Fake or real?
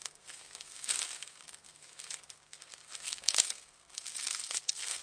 fake